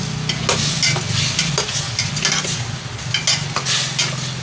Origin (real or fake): real